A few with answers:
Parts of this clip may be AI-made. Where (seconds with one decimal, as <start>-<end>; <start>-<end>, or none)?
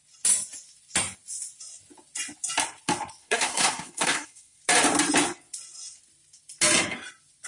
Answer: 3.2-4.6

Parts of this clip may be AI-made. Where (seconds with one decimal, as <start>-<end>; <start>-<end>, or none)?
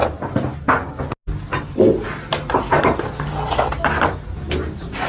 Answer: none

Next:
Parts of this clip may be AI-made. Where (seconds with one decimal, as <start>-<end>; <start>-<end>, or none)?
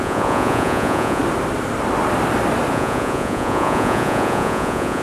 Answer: 0.0-1.2; 2.7-5.0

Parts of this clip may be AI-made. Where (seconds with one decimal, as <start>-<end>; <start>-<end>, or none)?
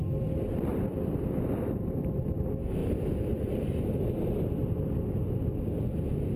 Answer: 0.7-1.7; 2.8-4.0; 4.6-5.2